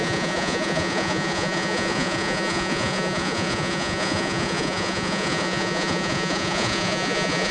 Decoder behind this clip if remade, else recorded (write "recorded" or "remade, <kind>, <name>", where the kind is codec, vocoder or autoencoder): remade, vocoder, Vocos